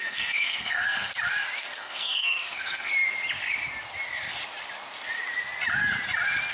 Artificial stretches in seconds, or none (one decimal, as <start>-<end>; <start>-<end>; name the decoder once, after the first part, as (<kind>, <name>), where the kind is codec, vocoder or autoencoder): 0.0-1.1 (codec, SNAC); 1.8-2.9